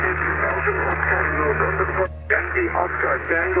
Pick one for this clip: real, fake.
fake